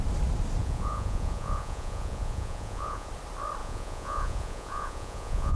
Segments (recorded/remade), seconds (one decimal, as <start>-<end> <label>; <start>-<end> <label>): 0.0-0.6 recorded; 0.6-3.1 remade; 3.1-3.6 recorded; 3.6-5.6 remade

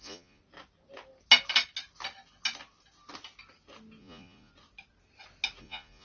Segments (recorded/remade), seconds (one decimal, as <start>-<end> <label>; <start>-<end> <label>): 0.0-0.4 remade; 0.4-4.0 recorded; 4.0-4.5 remade; 4.5-5.6 recorded; 5.6-6.0 remade

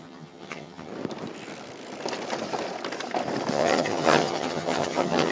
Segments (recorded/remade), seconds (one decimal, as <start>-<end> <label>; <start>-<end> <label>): 0.0-0.9 remade; 0.9-3.5 recorded; 3.5-5.3 remade

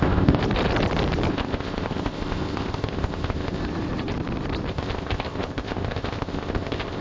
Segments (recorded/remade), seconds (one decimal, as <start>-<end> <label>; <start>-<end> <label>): 0.0-0.4 remade; 0.4-1.3 recorded; 1.3-3.6 remade; 3.6-4.7 recorded; 4.7-7.0 remade

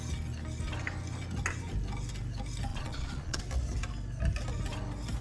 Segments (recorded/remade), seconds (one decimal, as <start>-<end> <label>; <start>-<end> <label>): 0.0-2.7 recorded; 2.7-3.4 remade; 3.4-5.2 recorded

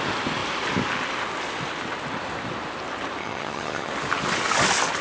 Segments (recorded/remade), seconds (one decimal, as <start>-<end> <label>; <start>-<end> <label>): 0.0-3.2 recorded; 3.2-3.9 remade; 3.9-5.0 recorded

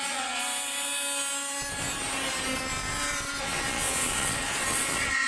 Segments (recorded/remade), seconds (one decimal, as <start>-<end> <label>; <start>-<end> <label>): 0.0-0.4 remade; 0.4-3.4 recorded; 3.4-5.3 remade

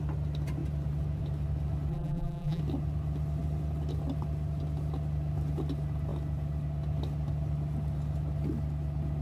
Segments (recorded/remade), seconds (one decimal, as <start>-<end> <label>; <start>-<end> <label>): 0.0-1.9 recorded; 1.9-2.6 remade; 2.6-9.2 recorded